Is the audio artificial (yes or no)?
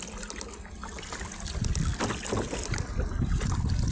no